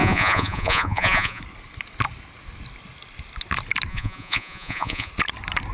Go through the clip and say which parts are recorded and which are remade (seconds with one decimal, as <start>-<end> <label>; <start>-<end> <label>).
0.0-1.4 remade; 1.4-3.9 recorded; 3.9-5.1 remade; 5.1-5.7 recorded